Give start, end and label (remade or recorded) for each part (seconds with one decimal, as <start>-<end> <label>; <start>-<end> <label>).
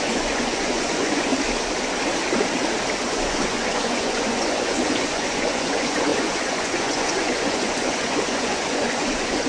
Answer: 0.0-1.3 remade; 1.3-3.0 recorded; 3.0-9.5 remade